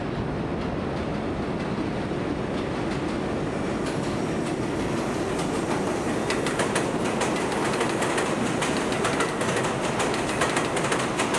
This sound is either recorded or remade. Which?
recorded